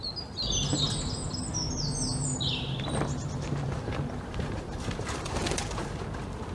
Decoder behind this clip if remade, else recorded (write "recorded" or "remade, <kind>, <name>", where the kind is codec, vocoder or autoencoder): remade, vocoder, BigVGAN v2